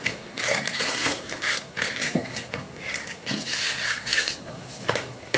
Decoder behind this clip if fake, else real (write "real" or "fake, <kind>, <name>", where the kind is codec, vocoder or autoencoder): fake, codec, SNAC